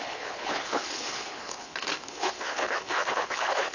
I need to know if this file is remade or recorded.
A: remade